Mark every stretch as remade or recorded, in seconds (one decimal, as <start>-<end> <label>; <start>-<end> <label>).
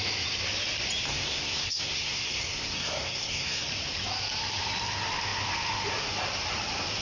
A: 0.0-1.1 recorded; 1.1-3.7 remade; 3.7-7.0 recorded